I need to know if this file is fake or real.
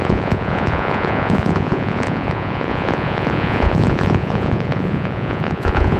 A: fake